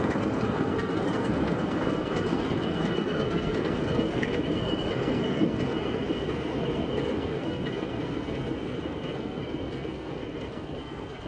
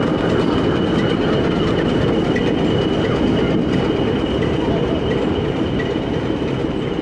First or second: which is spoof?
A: first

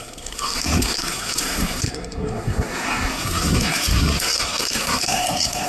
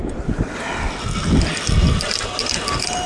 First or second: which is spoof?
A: first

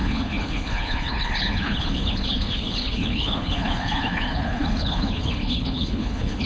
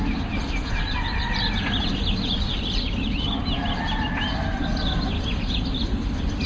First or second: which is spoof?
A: first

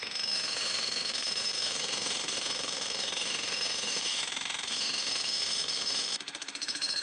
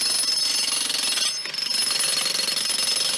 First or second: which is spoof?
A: first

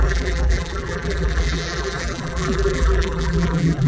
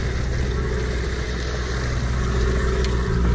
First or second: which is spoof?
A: first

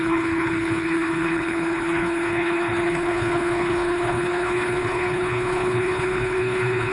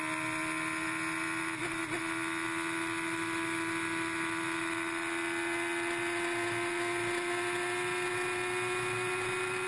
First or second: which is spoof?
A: first